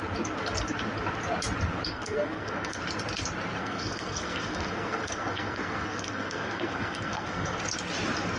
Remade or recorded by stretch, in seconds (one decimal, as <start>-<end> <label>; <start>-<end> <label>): 0.0-1.9 recorded; 1.9-2.8 remade; 2.8-3.6 recorded; 3.6-7.6 remade; 7.6-8.4 recorded